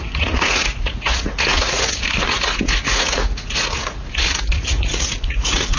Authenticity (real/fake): fake